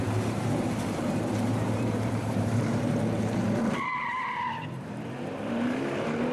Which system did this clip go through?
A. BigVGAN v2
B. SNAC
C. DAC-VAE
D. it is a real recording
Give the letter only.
A